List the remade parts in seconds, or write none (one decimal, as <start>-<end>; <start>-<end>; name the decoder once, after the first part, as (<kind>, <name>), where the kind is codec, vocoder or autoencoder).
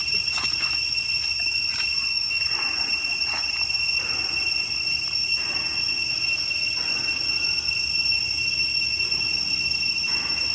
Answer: none